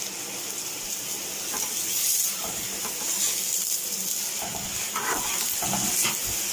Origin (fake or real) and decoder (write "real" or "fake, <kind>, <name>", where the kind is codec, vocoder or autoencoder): real